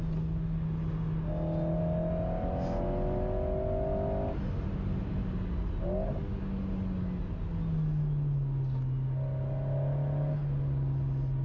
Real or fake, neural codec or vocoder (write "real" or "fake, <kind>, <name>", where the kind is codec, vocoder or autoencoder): real